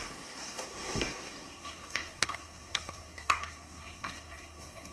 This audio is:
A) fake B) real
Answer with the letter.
A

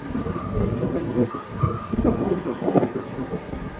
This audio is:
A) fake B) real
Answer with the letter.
A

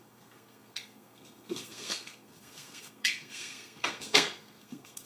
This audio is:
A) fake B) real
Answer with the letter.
A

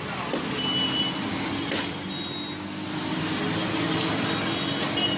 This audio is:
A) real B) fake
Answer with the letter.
A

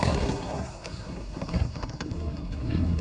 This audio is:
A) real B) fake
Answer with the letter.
B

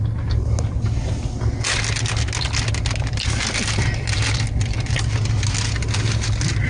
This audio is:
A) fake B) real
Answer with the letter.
B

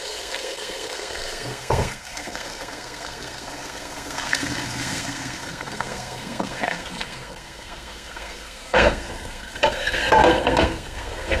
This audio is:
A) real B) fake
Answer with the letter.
B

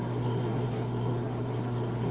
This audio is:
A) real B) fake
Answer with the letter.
B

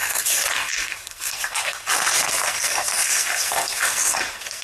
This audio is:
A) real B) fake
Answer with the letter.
B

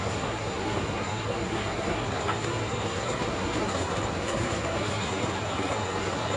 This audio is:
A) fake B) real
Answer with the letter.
A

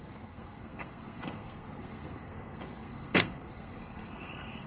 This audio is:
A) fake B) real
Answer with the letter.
A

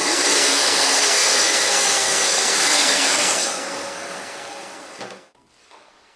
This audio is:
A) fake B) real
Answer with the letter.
A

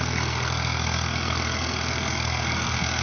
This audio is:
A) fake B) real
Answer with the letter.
A